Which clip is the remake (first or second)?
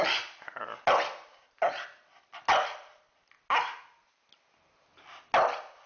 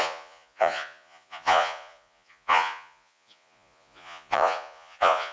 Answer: second